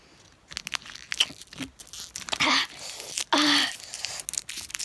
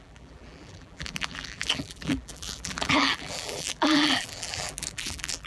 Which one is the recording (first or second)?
first